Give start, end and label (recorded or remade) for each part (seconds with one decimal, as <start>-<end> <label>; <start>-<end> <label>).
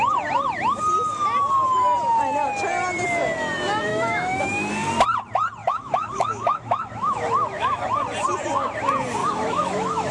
0.0-3.9 recorded; 3.9-4.7 remade; 4.7-5.6 recorded; 5.6-7.9 remade; 7.9-9.2 recorded; 9.2-10.1 remade